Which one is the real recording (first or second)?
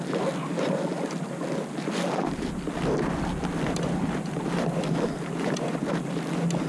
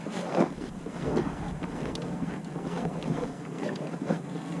first